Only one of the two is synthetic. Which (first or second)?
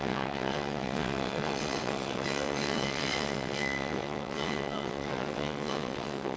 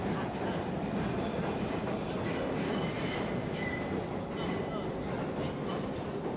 first